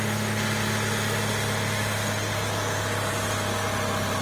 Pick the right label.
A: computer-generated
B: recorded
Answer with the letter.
B